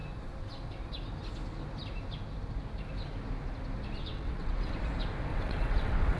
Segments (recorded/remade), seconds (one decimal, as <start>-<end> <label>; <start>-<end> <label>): 0.0-4.0 recorded; 4.0-4.7 remade; 4.7-5.3 recorded; 5.3-6.2 remade